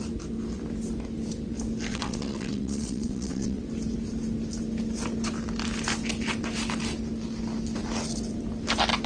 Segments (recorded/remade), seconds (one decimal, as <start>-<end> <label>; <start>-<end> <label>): 0.0-1.9 recorded; 1.9-3.6 remade; 3.6-9.1 recorded

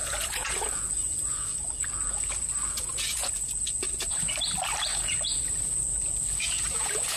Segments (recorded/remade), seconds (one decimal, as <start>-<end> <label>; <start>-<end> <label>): 0.0-4.3 remade; 4.3-4.9 recorded; 4.9-7.2 remade

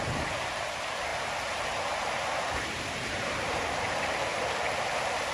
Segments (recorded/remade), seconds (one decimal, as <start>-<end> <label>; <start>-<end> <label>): 0.0-4.3 remade; 4.3-5.3 recorded

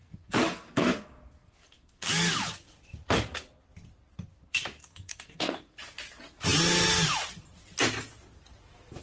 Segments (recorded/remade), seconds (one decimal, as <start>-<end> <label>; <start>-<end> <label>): 0.0-2.1 remade; 2.1-4.8 recorded; 4.8-5.5 remade; 5.5-9.0 recorded

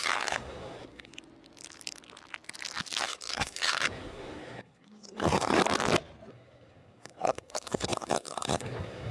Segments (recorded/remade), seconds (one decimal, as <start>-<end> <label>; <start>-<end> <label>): 0.0-1.1 remade; 1.1-3.0 recorded; 3.0-5.6 remade; 5.6-6.3 recorded; 6.3-9.1 remade

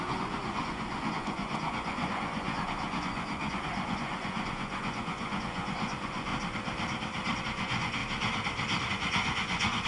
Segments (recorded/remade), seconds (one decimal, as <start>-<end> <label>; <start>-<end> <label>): 0.0-6.3 remade; 6.3-7.4 recorded; 7.4-8.0 remade; 8.0-8.9 recorded; 8.9-9.9 remade